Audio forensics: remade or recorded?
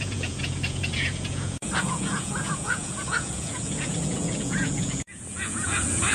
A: remade